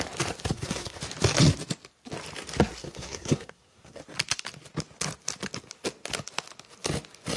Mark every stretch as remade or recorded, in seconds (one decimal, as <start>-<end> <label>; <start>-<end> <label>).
0.0-0.5 recorded; 0.5-1.0 remade; 1.0-2.8 recorded; 2.8-4.0 remade; 4.0-7.4 recorded